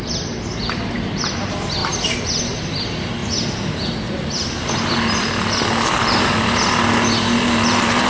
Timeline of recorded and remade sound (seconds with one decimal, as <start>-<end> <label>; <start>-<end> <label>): 0.0-1.8 remade; 1.8-2.7 recorded; 2.7-3.2 remade; 3.2-8.1 recorded